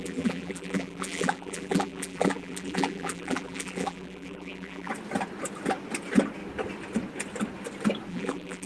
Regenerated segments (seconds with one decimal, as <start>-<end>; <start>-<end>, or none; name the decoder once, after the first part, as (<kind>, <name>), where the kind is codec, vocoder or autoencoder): 0.0-4.9 (vocoder, BigVGAN v2); 8.1-8.7